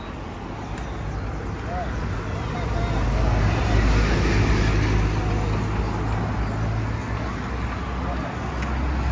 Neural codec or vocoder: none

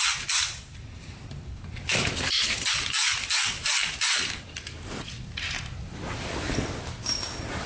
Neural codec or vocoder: none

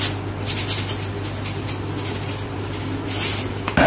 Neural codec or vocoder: none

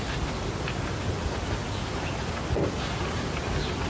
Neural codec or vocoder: none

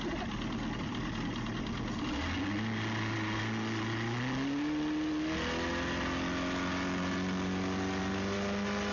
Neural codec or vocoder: none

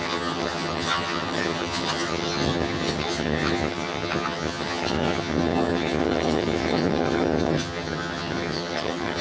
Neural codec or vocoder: vocoder, HiFi-GAN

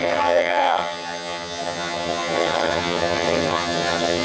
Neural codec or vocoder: vocoder, HiFi-GAN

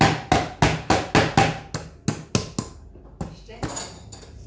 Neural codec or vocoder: none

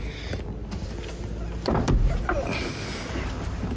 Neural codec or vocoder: none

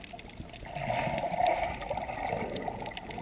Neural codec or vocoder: none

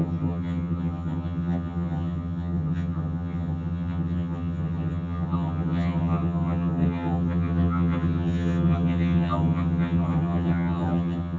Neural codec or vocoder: vocoder, HiFi-GAN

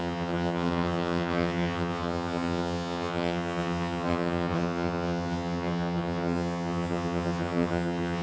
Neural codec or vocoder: vocoder, HiFi-GAN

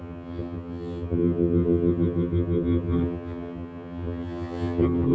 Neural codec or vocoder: vocoder, HiFi-GAN